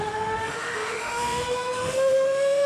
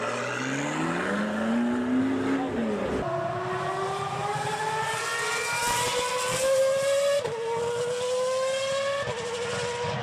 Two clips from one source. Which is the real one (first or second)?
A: second